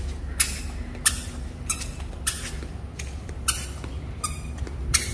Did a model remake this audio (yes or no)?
no